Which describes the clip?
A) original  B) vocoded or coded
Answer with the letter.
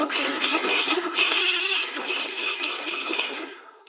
B